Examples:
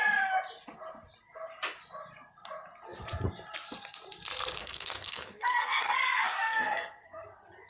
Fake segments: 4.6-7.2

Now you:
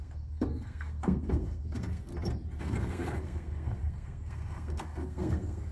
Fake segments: 0.0-2.1; 2.6-5.7

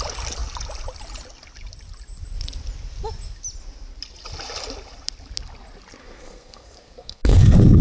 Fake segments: 6.0-7.8

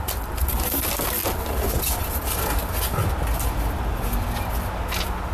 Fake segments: none

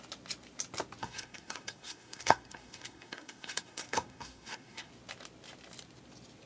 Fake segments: 1.0-4.9

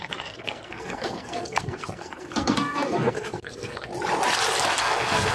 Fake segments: 0.0-3.9; 4.8-5.3

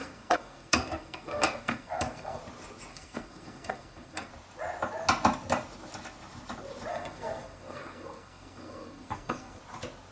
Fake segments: 0.0-2.4; 2.9-4.3; 6.9-9.6